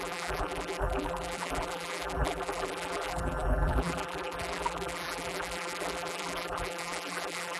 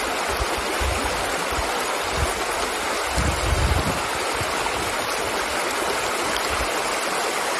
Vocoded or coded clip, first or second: first